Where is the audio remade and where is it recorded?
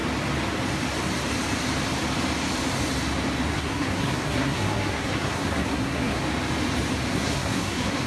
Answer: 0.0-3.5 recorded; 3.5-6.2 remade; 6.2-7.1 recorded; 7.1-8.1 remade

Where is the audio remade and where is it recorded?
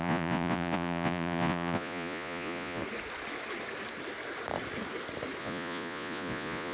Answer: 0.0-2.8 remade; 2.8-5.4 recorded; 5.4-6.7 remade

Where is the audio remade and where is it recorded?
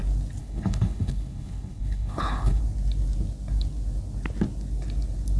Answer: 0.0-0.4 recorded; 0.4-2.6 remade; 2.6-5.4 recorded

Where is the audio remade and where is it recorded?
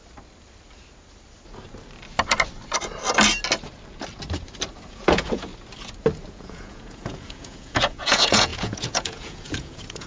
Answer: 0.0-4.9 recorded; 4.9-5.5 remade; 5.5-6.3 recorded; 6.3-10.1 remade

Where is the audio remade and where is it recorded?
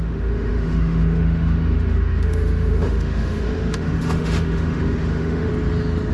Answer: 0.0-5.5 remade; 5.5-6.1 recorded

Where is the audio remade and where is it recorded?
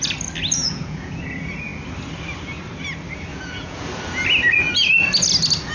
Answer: 0.0-0.6 recorded; 0.6-1.2 remade; 1.2-3.3 recorded; 3.3-3.9 remade; 3.9-5.7 recorded